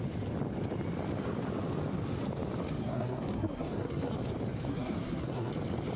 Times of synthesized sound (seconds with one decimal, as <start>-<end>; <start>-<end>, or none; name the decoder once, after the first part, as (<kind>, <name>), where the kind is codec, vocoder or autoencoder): 2.8-4.1 (codec, SNAC); 4.7-5.5